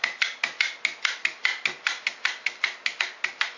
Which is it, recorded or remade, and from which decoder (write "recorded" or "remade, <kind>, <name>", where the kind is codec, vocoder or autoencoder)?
recorded